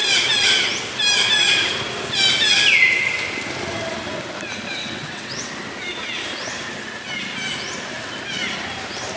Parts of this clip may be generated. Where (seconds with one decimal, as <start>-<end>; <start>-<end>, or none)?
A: 4.8-5.5